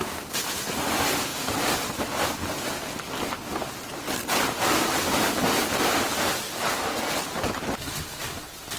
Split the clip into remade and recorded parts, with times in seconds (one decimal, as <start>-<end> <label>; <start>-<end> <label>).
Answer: 0.0-8.8 remade